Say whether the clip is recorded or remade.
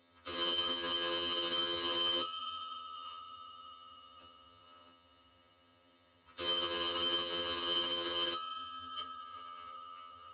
remade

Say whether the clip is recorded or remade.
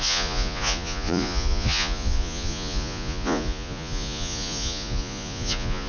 remade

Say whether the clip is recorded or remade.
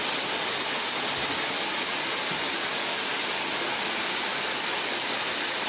recorded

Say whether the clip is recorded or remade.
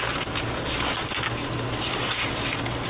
recorded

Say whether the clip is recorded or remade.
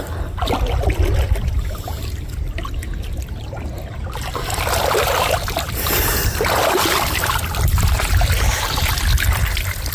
recorded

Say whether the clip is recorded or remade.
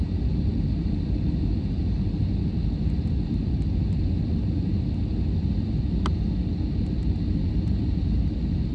recorded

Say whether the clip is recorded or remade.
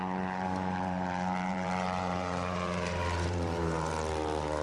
remade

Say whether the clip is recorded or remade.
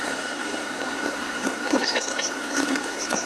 remade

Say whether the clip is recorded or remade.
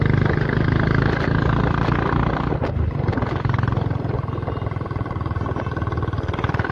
recorded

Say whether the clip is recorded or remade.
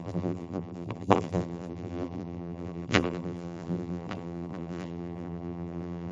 remade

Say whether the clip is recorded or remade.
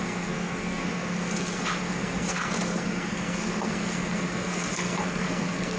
remade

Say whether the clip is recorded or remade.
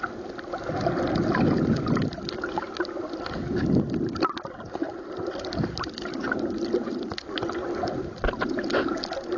recorded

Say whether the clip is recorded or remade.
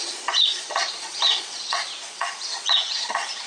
remade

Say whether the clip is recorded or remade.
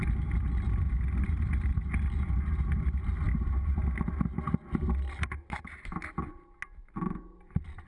recorded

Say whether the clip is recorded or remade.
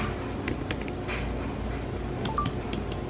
recorded